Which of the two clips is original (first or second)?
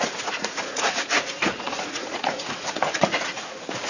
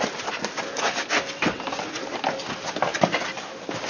second